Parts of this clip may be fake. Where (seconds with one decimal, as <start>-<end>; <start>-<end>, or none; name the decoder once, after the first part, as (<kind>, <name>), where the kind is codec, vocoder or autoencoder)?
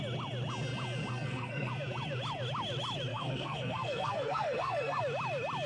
1.1-1.7 (codec, SNAC); 3.1-5.0